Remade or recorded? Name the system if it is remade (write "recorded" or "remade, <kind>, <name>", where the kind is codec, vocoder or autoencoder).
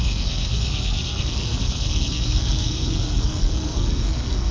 remade, codec, SNAC